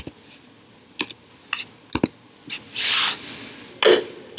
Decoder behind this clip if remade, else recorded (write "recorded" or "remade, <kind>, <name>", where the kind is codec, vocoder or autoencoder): recorded